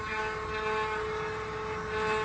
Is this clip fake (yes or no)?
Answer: no